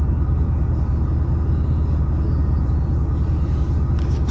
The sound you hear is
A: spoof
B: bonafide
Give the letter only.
B